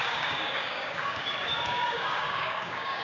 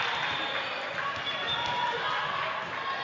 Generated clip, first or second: first